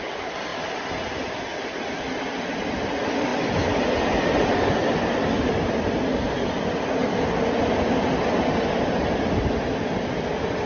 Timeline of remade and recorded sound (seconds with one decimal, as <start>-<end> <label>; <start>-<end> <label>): 0.0-10.7 recorded